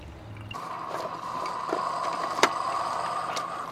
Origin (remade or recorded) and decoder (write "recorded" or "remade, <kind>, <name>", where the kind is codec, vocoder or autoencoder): recorded